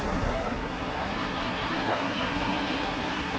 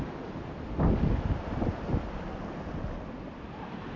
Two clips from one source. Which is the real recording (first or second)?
second